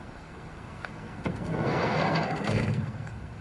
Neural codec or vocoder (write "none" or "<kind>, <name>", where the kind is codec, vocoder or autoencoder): codec, SNAC